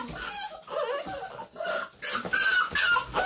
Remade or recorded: recorded